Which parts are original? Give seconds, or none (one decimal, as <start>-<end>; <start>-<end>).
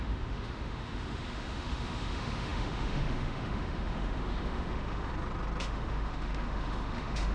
5.1-5.6